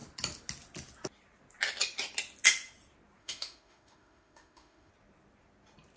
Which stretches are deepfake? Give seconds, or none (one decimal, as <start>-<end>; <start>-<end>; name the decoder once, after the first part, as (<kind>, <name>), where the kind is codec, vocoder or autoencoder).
3.2-4.9 (autoencoder, DAC-VAE)